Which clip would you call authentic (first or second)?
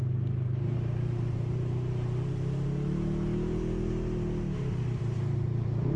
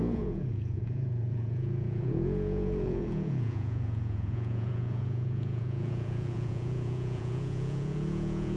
first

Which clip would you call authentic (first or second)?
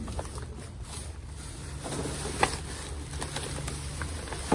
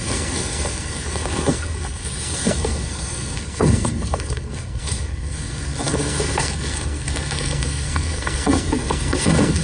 first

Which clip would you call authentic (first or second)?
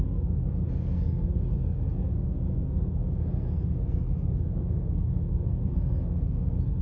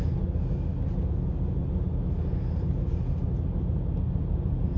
second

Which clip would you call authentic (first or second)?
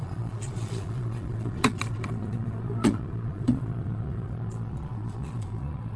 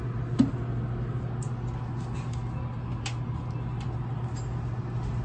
second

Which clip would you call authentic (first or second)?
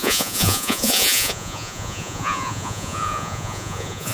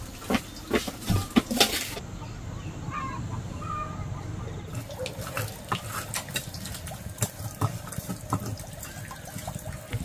second